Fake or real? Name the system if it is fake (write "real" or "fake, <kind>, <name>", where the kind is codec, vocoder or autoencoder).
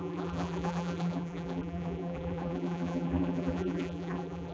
fake, vocoder, BigVGAN v2